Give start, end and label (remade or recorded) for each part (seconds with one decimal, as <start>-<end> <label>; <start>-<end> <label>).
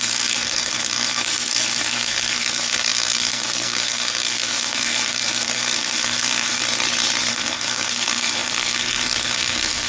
0.0-6.6 remade; 6.6-7.3 recorded; 7.3-9.9 remade